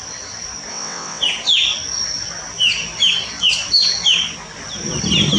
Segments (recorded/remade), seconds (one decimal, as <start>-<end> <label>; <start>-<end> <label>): 0.0-0.7 recorded; 0.7-1.2 remade; 1.2-5.4 recorded